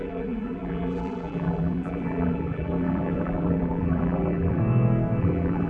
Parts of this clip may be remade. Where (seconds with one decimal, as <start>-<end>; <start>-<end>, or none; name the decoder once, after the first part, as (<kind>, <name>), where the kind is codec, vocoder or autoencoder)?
0.0-4.6 (vocoder, BigVGAN v2); 5.2-5.7